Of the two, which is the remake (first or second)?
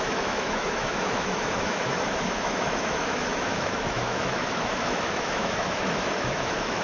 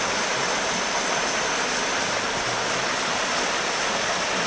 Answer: first